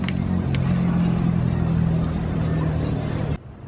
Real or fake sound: real